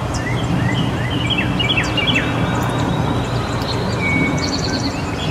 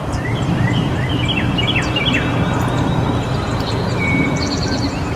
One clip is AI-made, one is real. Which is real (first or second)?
first